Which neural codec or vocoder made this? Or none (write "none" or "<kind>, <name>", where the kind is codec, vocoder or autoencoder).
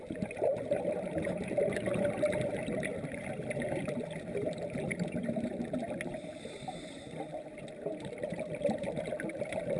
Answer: vocoder, BigVGAN v2